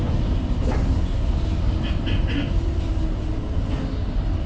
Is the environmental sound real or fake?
real